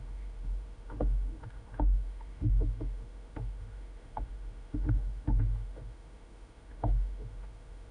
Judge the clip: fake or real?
fake